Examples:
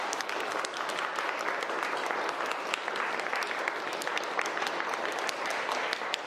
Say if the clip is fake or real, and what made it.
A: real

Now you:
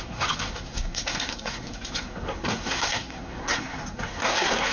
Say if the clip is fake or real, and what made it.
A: fake, codec, SNAC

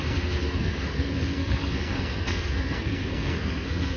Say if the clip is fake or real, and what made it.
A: fake, codec, SNAC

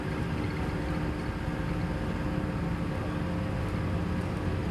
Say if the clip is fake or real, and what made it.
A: real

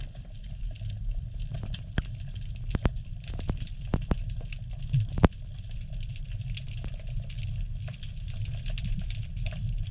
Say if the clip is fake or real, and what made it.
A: real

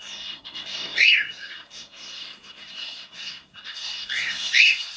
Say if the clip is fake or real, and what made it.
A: fake, codec, SNAC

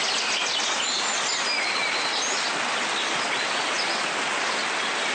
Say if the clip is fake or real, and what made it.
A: real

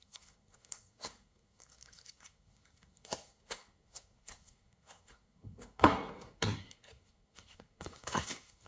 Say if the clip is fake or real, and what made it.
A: fake, codec, SNAC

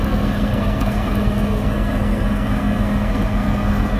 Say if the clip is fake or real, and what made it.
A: fake, codec, SNAC